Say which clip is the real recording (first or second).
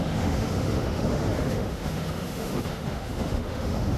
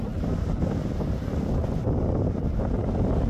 second